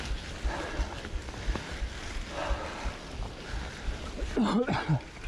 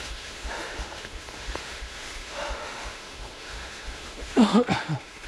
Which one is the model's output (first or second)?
second